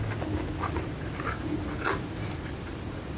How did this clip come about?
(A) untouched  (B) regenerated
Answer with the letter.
A